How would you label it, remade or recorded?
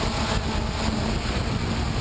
recorded